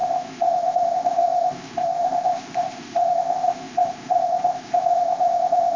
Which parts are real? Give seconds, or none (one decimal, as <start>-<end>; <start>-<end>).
none